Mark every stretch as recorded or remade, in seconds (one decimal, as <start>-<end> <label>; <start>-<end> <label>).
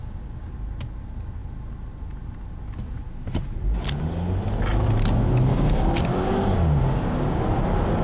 0.0-0.5 remade; 0.5-5.5 recorded; 5.5-7.4 remade; 7.4-8.0 recorded